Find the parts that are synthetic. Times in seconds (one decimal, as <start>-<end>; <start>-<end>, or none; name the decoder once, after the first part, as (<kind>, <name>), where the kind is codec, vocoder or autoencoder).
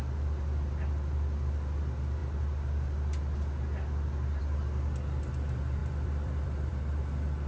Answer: 5.8-6.7 (vocoder, BigVGAN v2)